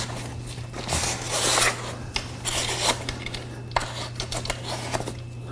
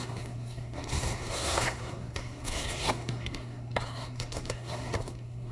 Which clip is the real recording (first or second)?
first